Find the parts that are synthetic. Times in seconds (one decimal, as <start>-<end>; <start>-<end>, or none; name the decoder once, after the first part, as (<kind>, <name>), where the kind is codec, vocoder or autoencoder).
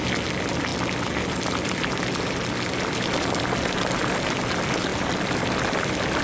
none